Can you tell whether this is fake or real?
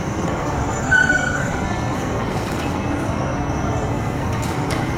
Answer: fake